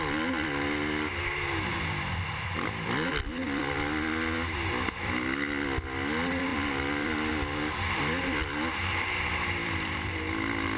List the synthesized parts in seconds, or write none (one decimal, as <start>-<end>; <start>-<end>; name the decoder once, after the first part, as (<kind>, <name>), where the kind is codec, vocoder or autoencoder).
1.7-3.6 (vocoder, BigVGAN v2); 6.5-7.3; 9.6-10.8